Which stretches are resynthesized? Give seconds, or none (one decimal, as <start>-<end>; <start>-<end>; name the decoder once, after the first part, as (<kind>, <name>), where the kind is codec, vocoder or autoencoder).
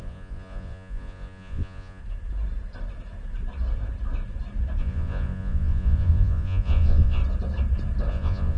0.0-2.0 (vocoder, Vocos); 4.8-7.2; 8.1-8.6